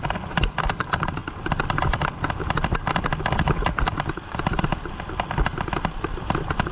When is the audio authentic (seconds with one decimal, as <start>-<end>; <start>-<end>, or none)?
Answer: 1.2-2.9